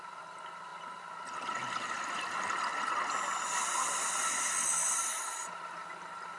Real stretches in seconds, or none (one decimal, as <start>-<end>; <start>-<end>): 0.0-6.4